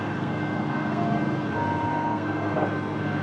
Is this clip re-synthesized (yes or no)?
yes